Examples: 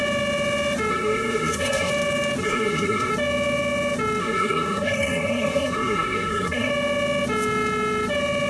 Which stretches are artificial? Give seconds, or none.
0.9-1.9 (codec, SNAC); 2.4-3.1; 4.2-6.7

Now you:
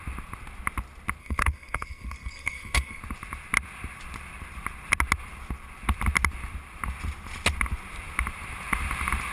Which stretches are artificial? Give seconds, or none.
1.2-3.0 (codec, SNAC)

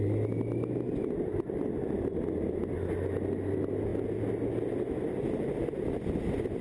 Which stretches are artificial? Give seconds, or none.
none

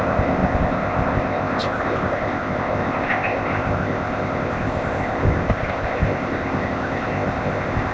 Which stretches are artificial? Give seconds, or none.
0.0-7.9 (codec, ZipCodec)